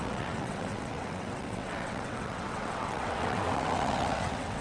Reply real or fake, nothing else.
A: fake